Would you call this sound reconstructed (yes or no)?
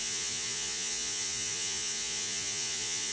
yes